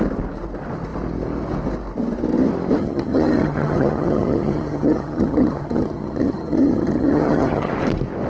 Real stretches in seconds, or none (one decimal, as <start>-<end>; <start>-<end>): 0.0-2.8; 7.7-8.3

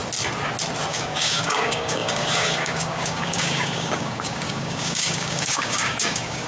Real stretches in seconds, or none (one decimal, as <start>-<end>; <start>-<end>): 0.0-0.9

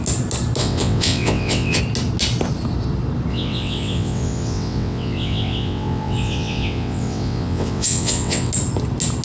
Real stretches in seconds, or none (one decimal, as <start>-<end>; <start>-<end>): 0.0-0.6; 1.8-3.3; 8.5-9.2